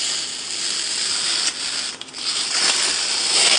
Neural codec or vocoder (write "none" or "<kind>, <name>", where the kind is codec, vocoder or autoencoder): none